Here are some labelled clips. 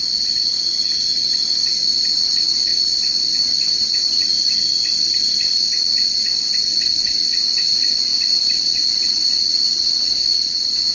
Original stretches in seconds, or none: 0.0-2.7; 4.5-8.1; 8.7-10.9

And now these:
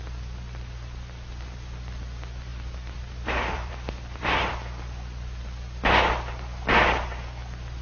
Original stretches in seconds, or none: 0.0-2.5; 4.5-7.8

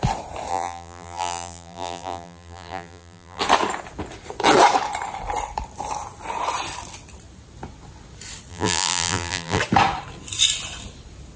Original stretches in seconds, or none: 0.0-0.5; 3.4-8.5; 9.6-11.4

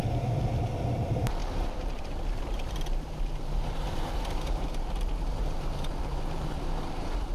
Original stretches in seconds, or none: none

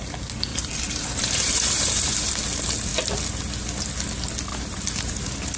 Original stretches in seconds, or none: 0.0-0.5; 2.3-4.5

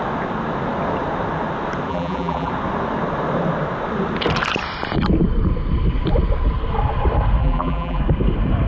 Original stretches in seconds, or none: 0.0-1.9; 2.5-7.4; 8.0-8.7